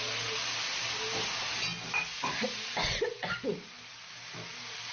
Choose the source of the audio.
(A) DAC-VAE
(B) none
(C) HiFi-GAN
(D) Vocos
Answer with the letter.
B